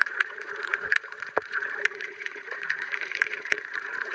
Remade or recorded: remade